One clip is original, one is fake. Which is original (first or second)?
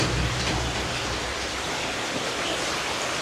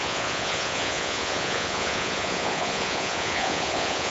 first